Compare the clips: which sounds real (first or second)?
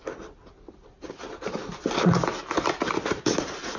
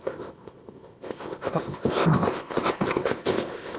first